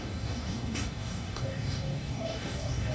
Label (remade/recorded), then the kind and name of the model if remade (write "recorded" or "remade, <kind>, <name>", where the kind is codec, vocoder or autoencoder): remade, codec, DAC